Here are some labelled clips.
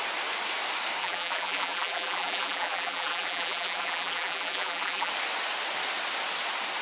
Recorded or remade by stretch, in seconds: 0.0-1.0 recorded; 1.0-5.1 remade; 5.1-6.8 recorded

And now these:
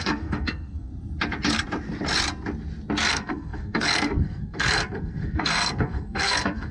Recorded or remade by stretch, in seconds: 0.0-0.9 remade; 0.9-3.1 recorded; 3.1-6.7 remade

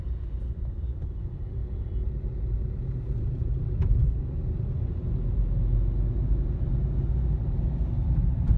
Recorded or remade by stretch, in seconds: 0.0-1.6 remade; 1.6-6.8 recorded; 6.8-8.6 remade

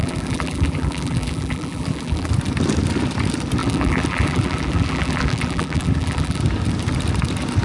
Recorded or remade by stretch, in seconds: 0.0-2.3 remade; 2.3-3.6 recorded; 3.6-6.4 remade; 6.4-7.6 recorded

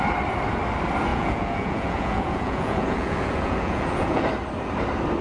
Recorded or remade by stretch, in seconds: 0.0-1.1 recorded; 1.1-4.2 remade; 4.2-5.2 recorded

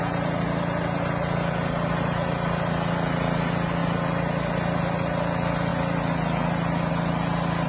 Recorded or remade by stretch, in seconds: 0.0-7.7 recorded

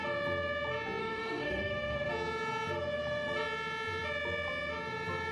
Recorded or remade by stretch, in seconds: 0.0-1.0 recorded; 1.0-2.1 remade; 2.1-5.3 recorded